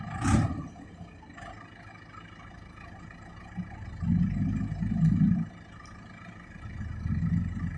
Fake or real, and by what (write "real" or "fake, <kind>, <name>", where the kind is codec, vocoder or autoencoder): real